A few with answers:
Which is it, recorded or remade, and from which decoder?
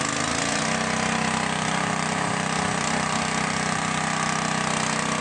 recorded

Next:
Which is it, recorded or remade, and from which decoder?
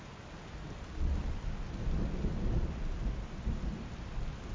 recorded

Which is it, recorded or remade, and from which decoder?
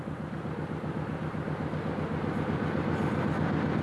recorded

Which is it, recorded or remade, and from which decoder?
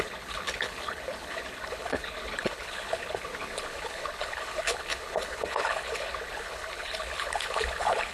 remade, codec, HILCodec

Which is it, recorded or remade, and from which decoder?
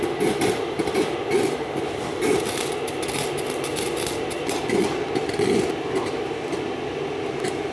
recorded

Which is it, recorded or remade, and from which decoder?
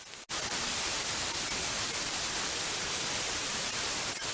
recorded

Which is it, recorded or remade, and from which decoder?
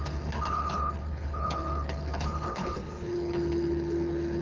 remade, codec, HILCodec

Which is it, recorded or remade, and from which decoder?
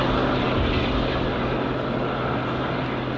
recorded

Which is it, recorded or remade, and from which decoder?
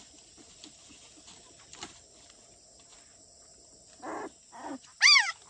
recorded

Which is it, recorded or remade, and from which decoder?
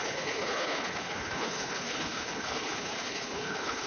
remade, codec, HILCodec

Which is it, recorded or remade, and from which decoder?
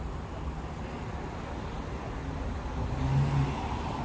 recorded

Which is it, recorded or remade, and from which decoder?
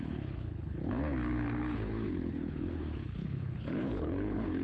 remade, codec, HILCodec